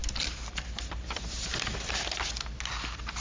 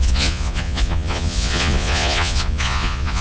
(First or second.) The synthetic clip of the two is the second